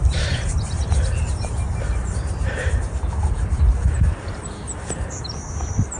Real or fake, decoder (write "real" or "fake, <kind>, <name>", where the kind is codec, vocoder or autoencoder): fake, vocoder, BigVGAN v2